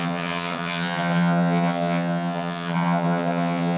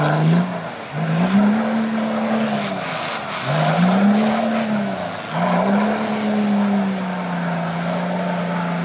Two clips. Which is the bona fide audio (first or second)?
second